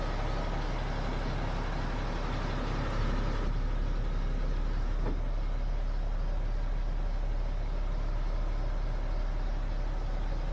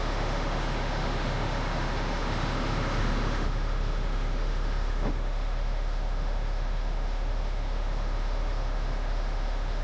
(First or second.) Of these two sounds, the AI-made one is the second